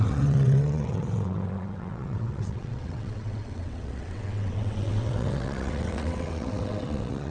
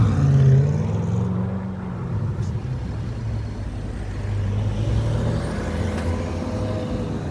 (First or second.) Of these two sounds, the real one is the second